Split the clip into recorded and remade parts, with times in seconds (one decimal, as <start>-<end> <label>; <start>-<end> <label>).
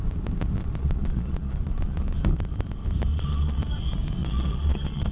0.0-0.6 recorded; 0.6-2.2 remade; 2.2-3.1 recorded; 3.1-3.6 remade; 3.6-4.2 recorded; 4.2-5.1 remade